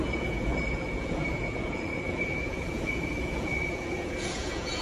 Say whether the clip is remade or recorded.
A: remade